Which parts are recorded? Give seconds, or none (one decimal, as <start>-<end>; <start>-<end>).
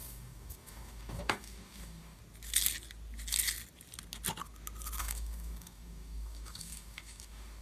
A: 2.2-5.0